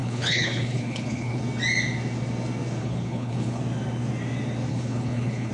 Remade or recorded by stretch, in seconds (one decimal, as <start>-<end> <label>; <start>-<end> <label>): 0.0-1.4 remade; 1.4-2.8 recorded; 2.8-3.6 remade; 3.6-4.7 recorded; 4.7-5.5 remade

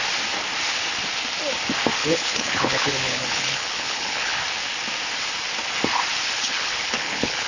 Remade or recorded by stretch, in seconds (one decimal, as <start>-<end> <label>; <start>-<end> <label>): 0.0-2.0 recorded; 2.0-4.4 remade; 4.4-6.5 recorded; 6.5-7.5 remade

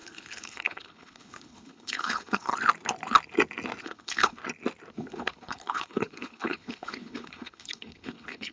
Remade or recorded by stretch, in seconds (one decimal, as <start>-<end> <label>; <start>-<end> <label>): 0.0-2.5 remade; 2.5-3.8 recorded; 3.8-4.4 remade; 4.4-4.9 recorded; 4.9-8.5 remade

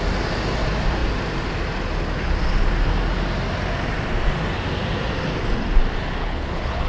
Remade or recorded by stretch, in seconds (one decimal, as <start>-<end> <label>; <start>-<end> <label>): 0.0-6.2 recorded; 6.2-6.9 remade

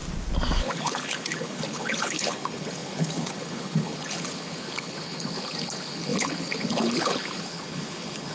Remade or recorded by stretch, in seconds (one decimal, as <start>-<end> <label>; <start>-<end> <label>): 0.0-0.6 recorded; 0.6-8.3 remade

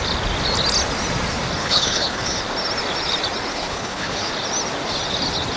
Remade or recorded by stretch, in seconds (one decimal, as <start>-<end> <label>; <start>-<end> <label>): 0.0-1.6 recorded; 1.6-2.4 remade; 2.4-3.5 recorded; 3.5-4.3 remade; 4.3-5.6 recorded